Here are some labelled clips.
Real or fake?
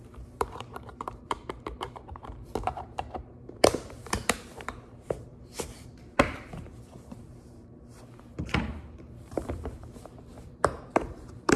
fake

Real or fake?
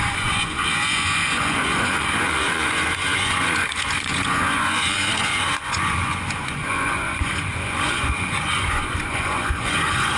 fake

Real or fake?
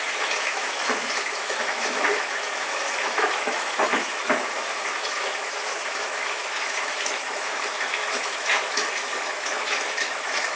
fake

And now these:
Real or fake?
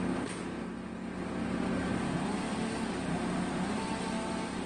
real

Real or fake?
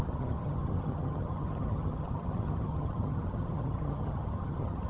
fake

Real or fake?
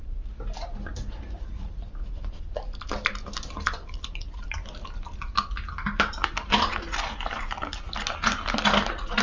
real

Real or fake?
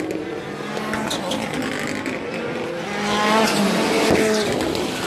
real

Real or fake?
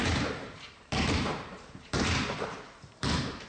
fake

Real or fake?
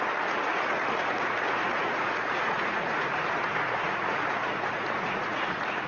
fake